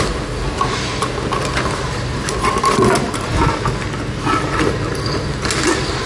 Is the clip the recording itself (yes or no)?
yes